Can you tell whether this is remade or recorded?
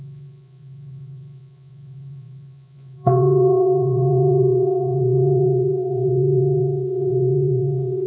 remade